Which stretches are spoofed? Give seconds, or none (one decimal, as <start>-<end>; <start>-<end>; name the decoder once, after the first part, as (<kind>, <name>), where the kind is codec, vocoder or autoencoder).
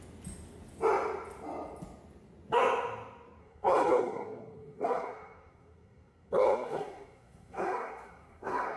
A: 3.4-8.8 (codec, SNAC)